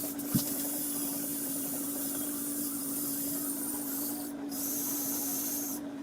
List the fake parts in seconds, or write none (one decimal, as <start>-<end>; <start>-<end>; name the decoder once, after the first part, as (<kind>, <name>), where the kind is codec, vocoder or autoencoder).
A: 0.0-6.0 (vocoder, BigVGAN v2)

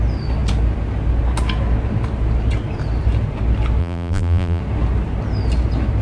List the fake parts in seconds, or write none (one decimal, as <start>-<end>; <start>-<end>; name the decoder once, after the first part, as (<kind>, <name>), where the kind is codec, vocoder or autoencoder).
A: 3.8-4.6 (vocoder, BigVGAN v2)

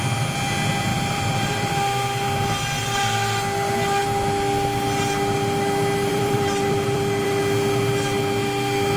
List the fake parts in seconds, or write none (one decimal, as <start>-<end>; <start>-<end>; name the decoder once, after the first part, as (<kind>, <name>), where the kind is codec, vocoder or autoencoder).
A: 0.9-1.7 (vocoder, BigVGAN v2); 6.1-7.4

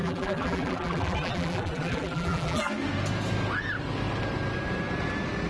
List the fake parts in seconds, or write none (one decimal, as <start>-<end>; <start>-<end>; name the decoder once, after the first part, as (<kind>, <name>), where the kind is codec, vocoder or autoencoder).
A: 0.0-2.7 (vocoder, BigVGAN v2)

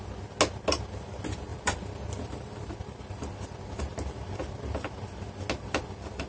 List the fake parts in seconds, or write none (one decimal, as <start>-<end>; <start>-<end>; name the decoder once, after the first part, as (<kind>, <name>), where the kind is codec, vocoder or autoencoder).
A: 1.5-2.7 (vocoder, BigVGAN v2)

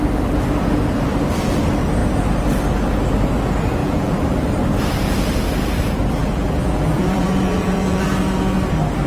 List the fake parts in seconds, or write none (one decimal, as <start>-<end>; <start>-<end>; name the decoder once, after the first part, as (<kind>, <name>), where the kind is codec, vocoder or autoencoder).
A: 3.8-4.5 (vocoder, BigVGAN v2); 6.2-8.1

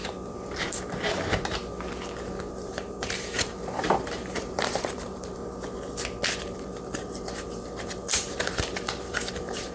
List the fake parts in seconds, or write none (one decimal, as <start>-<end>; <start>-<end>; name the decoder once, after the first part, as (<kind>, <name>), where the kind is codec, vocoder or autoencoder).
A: 2.5-5.4 (vocoder, BigVGAN v2); 6.4-9.7

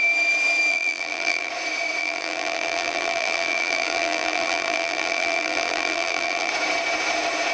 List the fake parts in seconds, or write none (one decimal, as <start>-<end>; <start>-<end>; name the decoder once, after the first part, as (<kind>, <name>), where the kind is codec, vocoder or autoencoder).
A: 0.7-1.5 (vocoder, BigVGAN v2); 2.0-6.5